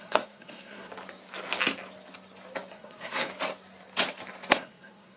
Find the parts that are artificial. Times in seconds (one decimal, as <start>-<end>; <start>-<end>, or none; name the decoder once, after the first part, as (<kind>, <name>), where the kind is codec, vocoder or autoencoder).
0.0-0.9 (codec, SNAC); 2.7-3.3; 4.5-5.2